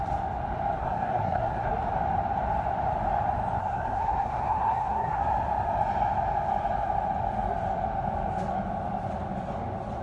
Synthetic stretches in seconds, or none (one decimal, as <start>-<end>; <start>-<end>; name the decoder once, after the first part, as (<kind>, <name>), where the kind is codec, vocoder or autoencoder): 0.8-1.7 (codec, SNAC); 3.6-5.2